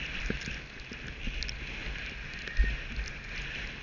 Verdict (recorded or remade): recorded